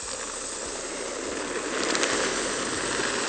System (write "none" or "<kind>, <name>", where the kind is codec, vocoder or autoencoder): none